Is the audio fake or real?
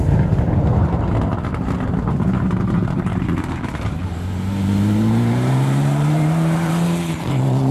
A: fake